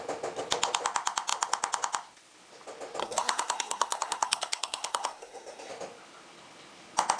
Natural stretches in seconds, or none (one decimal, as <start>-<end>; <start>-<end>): 0.0-3.0; 5.7-7.2

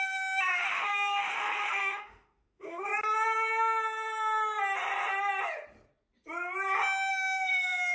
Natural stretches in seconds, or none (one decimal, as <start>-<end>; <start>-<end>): 2.9-7.1

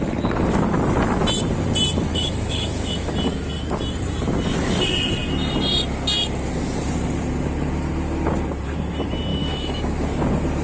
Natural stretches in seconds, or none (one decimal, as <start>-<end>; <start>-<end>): 0.0-2.1; 3.1-9.3; 10.0-10.6

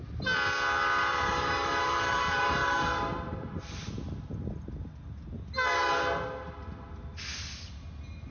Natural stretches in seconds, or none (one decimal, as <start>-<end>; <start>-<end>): 0.0-1.1; 3.9-8.3

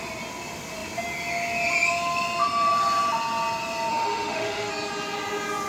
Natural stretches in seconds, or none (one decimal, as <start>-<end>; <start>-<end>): 0.0-3.9; 4.7-5.7

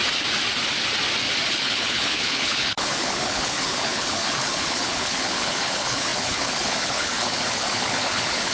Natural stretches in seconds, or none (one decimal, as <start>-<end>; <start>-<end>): 0.0-1.5

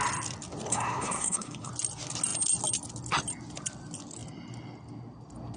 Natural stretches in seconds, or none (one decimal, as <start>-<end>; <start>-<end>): 0.0-0.7; 1.7-5.6